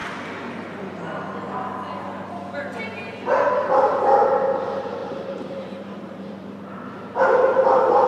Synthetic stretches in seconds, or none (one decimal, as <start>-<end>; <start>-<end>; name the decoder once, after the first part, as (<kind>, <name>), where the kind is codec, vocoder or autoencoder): 5.0-8.1 (vocoder, BigVGAN v2)

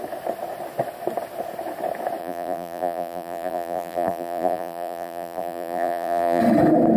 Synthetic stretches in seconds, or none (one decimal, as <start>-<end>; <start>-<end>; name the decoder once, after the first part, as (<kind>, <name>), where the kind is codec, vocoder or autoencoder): 2.2-6.4 (vocoder, BigVGAN v2)

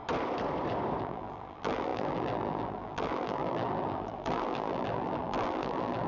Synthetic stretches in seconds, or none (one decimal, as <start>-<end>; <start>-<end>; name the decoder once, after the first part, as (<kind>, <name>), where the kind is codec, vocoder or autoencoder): 1.0-6.1 (vocoder, BigVGAN v2)

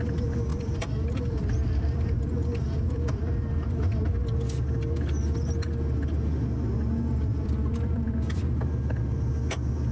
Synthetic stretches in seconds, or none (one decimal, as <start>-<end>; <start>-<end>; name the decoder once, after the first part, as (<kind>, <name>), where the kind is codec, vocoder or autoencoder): 0.5-3.9 (vocoder, BigVGAN v2); 7.1-8.4